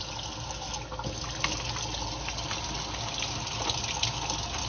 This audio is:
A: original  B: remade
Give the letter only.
A